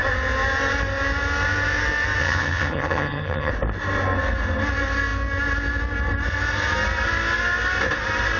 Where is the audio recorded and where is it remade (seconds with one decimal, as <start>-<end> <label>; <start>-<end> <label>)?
0.0-2.2 recorded; 2.2-3.5 remade; 3.5-8.4 recorded